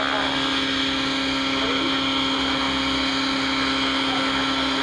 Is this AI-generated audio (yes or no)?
no